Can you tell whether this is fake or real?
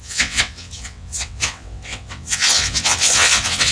fake